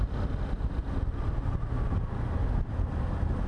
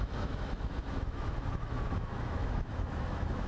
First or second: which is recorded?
first